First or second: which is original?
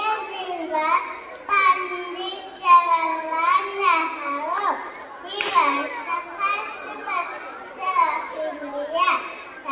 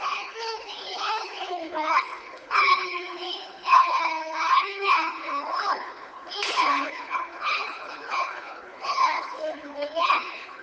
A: first